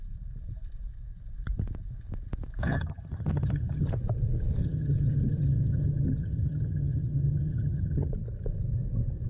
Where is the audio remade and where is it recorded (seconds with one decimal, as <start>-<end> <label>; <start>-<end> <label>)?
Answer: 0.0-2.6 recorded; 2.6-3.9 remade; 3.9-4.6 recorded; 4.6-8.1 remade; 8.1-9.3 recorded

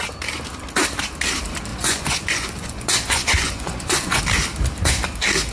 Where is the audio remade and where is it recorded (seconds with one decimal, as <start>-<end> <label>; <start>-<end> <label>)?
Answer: 0.0-1.7 recorded; 1.7-4.2 remade; 4.2-5.5 recorded

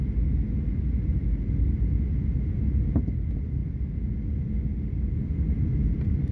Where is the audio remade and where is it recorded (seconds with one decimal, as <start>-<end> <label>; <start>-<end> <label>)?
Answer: 0.0-6.3 recorded

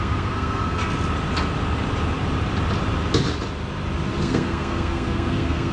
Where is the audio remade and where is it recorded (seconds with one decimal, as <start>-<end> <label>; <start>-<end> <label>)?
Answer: 0.0-0.8 remade; 0.8-4.2 recorded; 4.2-5.7 remade